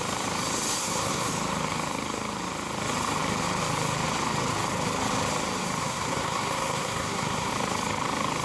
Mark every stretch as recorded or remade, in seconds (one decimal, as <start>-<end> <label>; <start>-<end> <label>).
0.0-0.8 recorded; 0.8-1.3 remade; 1.3-5.8 recorded; 5.8-7.5 remade; 7.5-8.4 recorded